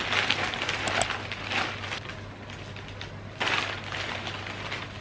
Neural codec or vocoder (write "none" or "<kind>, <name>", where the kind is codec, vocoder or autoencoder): none